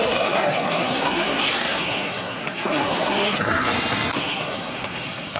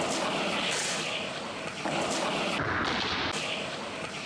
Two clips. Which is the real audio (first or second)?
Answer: second